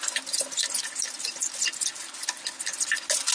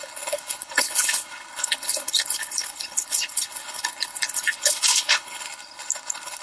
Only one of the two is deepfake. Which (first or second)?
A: second